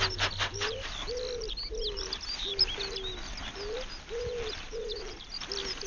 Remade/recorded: recorded